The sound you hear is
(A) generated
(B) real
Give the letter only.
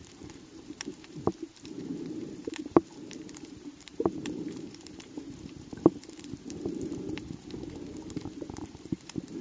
A